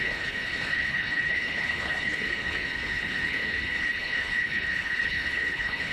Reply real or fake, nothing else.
fake